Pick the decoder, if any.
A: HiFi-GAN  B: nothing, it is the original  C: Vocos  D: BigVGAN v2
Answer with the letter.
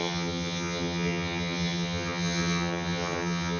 A